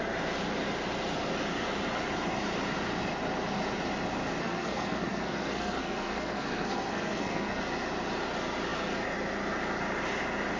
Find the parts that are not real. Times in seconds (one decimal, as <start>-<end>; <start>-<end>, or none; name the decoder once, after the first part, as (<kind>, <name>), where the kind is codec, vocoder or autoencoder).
4.4-7.6 (codec, SNAC)